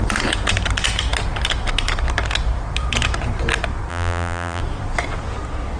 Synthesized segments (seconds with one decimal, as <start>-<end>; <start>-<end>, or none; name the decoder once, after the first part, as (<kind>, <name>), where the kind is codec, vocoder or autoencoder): 3.9-4.6 (vocoder, BigVGAN v2)